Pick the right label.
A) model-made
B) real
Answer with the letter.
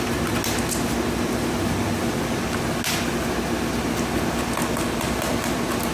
B